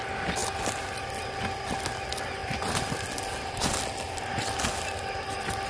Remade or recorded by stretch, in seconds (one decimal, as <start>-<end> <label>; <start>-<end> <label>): 0.0-5.7 recorded